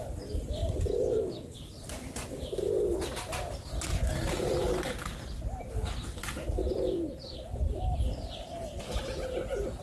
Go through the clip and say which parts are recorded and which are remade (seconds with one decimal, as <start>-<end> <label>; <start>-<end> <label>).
0.0-0.6 recorded; 0.6-1.2 remade; 1.2-4.2 recorded; 4.2-4.8 remade; 4.8-6.6 recorded; 6.6-9.8 remade